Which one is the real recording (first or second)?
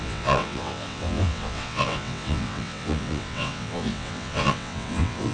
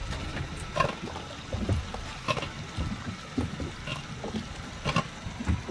second